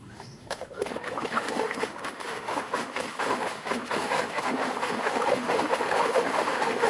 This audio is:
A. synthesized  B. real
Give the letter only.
A